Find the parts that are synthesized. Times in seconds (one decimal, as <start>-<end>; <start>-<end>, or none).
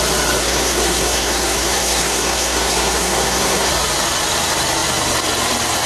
0.4-3.7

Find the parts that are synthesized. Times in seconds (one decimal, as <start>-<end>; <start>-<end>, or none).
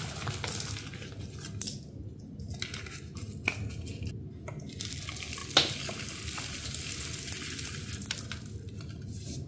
none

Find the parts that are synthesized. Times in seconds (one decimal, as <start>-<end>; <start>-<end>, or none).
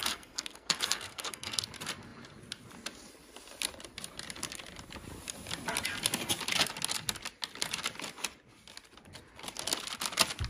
0.0-1.6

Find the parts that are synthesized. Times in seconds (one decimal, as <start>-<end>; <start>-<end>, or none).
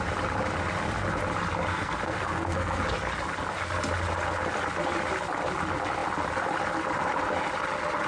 1.7-2.8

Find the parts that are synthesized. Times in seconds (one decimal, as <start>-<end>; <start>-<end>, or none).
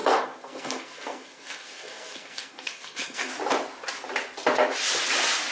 0.0-3.3